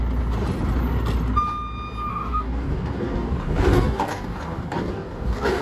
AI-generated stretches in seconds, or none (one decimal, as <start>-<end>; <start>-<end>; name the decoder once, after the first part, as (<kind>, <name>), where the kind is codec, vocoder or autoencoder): 2.1-5.6 (codec, DAC)